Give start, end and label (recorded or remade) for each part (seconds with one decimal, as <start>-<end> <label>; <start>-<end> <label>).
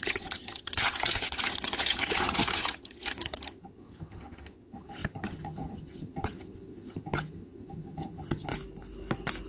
0.0-8.5 remade; 8.5-9.5 recorded